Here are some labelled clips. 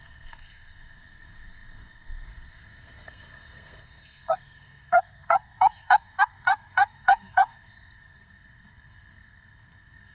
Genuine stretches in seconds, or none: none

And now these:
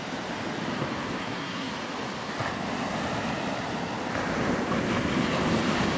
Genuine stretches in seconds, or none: 0.0-1.2; 1.7-6.0

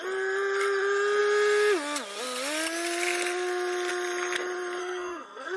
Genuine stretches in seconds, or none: 0.0-4.8

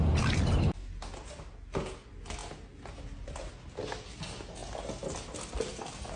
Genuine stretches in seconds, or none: 0.0-6.2

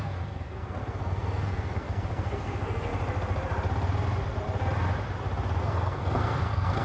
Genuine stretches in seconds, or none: 2.9-5.6

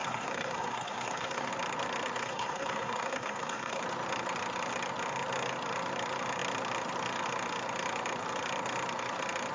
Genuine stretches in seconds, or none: 1.5-2.2; 3.8-9.5